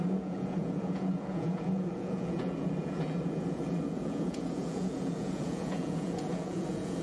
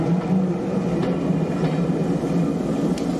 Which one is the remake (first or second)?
first